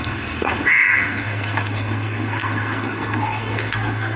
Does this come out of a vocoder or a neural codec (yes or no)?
yes